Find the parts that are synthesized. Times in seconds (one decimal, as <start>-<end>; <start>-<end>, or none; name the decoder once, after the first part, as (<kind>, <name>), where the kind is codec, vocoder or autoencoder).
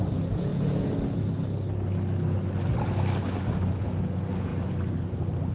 0.0-0.5 (vocoder, Vocos); 3.8-4.5